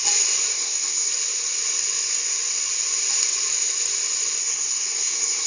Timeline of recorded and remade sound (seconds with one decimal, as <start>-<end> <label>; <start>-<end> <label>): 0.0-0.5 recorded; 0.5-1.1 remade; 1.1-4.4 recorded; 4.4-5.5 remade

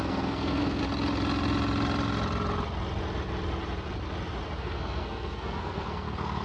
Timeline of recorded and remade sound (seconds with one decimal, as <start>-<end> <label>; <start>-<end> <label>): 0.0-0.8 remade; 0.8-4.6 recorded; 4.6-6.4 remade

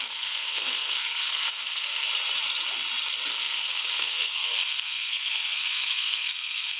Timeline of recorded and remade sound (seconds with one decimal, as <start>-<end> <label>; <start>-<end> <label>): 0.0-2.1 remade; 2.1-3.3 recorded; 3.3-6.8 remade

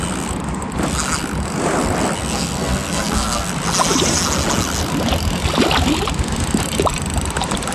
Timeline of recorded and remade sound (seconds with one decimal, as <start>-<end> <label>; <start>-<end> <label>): 0.0-2.2 recorded; 2.2-3.5 remade; 3.5-7.7 recorded

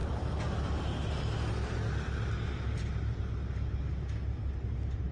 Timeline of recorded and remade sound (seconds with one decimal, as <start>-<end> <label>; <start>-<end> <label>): 0.0-5.1 recorded

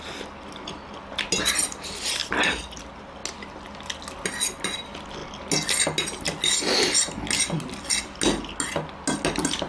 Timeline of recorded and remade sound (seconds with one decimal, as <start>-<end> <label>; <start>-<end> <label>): 0.0-9.7 recorded